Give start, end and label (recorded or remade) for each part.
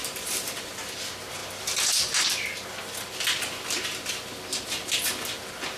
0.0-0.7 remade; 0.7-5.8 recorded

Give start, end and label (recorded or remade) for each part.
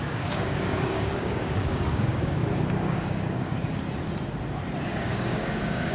0.0-2.4 remade; 2.4-2.9 recorded; 2.9-3.5 remade; 3.5-4.9 recorded; 4.9-5.9 remade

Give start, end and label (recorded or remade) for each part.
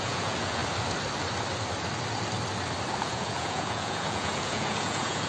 0.0-0.6 remade; 0.6-3.0 recorded; 3.0-5.3 remade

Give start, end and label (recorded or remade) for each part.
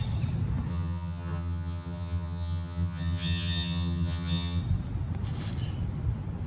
0.0-0.7 recorded; 0.7-4.6 remade; 4.6-6.5 recorded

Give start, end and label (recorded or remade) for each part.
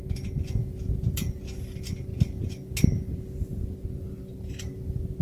0.0-0.6 recorded; 0.6-1.4 remade; 1.4-5.2 recorded